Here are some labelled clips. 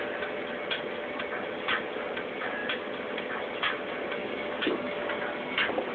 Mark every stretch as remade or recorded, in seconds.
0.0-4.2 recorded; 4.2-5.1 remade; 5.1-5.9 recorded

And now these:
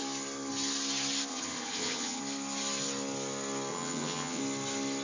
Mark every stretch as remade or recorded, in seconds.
0.0-1.3 recorded; 1.3-2.2 remade; 2.2-3.7 recorded; 3.7-4.4 remade; 4.4-5.0 recorded

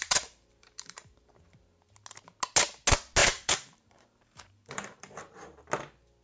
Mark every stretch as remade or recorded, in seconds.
0.0-1.3 remade; 1.3-3.2 recorded; 3.2-5.6 remade; 5.6-6.2 recorded

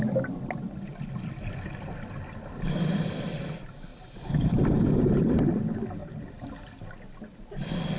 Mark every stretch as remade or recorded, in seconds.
0.0-3.9 recorded; 3.9-4.4 remade; 4.4-6.0 recorded; 6.0-6.5 remade; 6.5-8.0 recorded

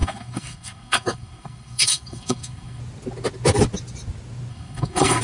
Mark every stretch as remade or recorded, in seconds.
0.0-2.8 remade; 2.8-4.5 recorded; 4.5-5.2 remade

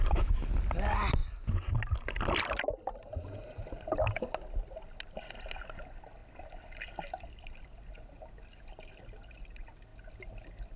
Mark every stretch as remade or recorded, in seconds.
0.0-10.8 recorded

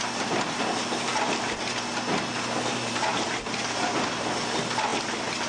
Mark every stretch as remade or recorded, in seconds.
0.0-5.5 recorded